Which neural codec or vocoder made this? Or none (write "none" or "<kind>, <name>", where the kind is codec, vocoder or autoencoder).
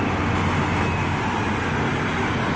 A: none